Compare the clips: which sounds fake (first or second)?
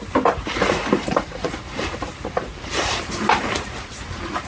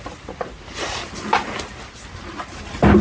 first